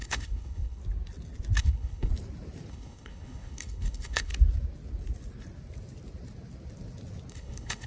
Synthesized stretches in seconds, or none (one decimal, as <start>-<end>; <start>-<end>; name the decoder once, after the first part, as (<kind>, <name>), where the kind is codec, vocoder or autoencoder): 0.0-0.8 (codec, HILCodec); 1.6-2.1; 2.7-4.3; 7.3-7.9